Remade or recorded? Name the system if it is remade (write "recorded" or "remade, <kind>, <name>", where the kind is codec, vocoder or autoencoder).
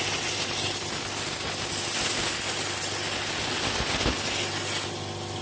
recorded